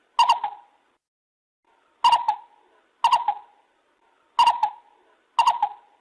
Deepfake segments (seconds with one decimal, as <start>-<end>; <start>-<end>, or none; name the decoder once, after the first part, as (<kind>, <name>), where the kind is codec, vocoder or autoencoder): none